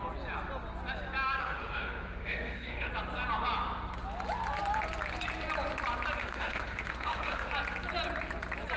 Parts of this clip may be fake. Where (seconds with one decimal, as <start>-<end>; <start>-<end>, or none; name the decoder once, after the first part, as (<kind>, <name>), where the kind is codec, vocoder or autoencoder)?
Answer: 1.4-2.9 (autoencoder, DAC-VAE); 6.2-7.5